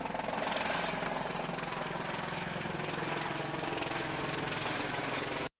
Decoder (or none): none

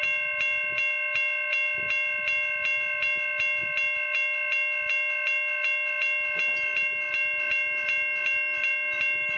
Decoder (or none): none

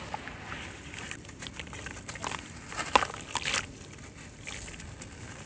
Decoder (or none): none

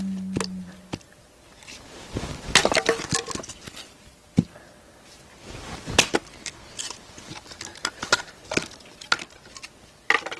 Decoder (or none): none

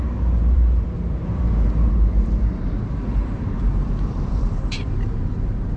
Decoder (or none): vocoder, BigVGAN v2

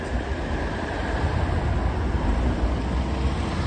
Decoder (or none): none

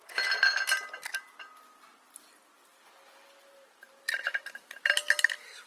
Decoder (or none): none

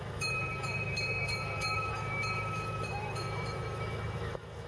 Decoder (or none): autoencoder, DAC-VAE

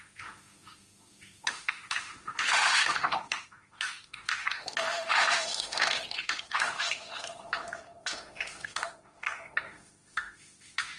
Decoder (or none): autoencoder, DAC-VAE